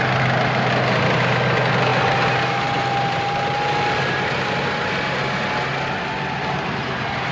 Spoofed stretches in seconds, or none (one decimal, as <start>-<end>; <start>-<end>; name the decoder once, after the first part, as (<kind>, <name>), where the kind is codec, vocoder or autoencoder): none